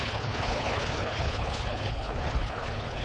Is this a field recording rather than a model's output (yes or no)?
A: no